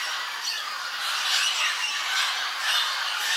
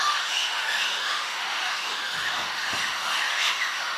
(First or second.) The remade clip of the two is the second